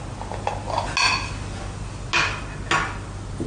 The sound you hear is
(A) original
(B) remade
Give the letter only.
A